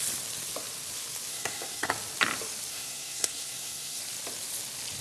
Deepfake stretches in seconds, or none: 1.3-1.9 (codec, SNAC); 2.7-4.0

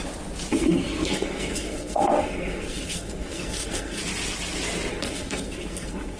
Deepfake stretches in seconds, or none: 0.5-4.0 (codec, SNAC); 4.9-6.2

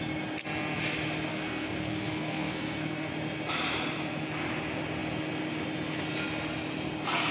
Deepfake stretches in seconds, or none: 1.3-3.1 (codec, SNAC)

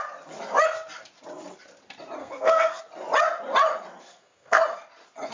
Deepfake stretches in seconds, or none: 2.2-2.8 (codec, SNAC); 4.1-4.6